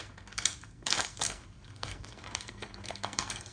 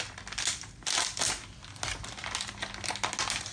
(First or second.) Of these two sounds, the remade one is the first